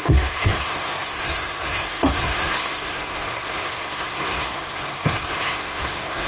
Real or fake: fake